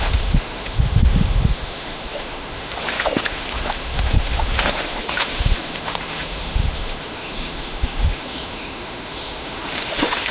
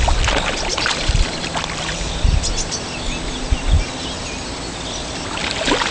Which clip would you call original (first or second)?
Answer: second